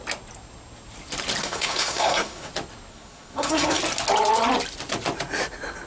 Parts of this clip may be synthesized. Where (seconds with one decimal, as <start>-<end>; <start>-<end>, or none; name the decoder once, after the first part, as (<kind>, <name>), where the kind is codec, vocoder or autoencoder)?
1.4-2.5 (codec, SNAC); 2.9-3.8